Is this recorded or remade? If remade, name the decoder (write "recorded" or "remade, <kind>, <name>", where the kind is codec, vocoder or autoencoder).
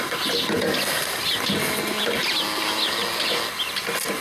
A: recorded